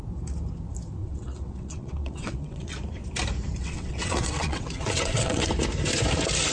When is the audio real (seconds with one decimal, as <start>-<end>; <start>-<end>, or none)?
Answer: 0.0-1.0; 2.7-3.6; 5.5-6.5

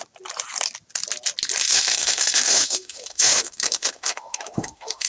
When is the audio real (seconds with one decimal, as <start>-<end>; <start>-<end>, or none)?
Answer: 0.0-1.6

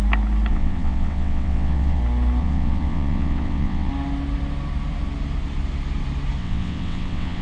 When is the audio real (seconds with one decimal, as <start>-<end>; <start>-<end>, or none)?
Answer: 0.0-0.5; 2.0-2.4; 3.9-6.4

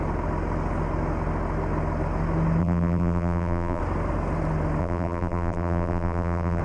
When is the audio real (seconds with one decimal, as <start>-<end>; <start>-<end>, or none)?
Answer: 0.0-2.6; 3.8-4.8

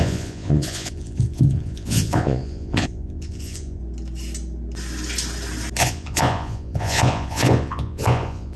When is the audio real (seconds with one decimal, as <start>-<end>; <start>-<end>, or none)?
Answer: 3.8-5.8

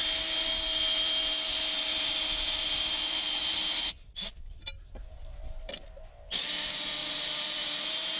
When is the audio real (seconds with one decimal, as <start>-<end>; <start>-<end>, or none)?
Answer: 0.0-1.9; 3.0-7.0

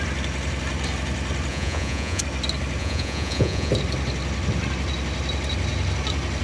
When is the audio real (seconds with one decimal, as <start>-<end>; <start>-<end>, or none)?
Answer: 0.0-1.5; 2.2-2.8; 3.7-6.4

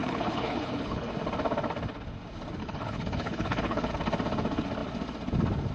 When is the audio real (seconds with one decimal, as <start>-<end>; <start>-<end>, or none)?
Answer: 1.1-2.6; 3.9-5.7